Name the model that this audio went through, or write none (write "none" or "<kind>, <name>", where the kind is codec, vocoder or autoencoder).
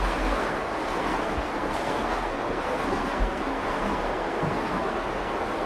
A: codec, SNAC